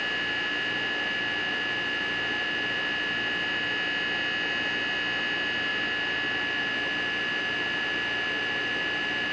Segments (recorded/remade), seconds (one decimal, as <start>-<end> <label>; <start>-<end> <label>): 0.0-9.3 recorded